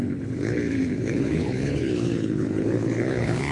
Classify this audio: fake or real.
fake